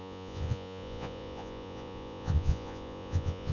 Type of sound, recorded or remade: remade